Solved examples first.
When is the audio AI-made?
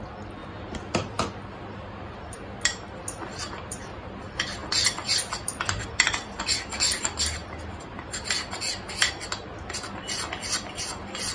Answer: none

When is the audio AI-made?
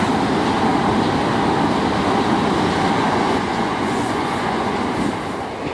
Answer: 3.0-4.8